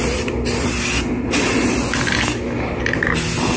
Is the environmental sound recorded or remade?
recorded